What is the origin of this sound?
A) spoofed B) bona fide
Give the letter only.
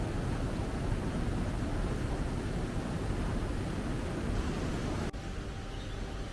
B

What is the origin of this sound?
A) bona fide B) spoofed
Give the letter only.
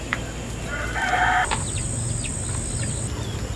A